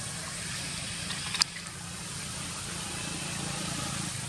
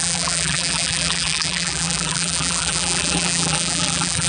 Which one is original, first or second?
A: first